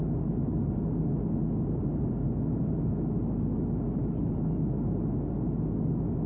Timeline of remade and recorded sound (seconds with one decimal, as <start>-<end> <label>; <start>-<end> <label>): 0.0-6.3 recorded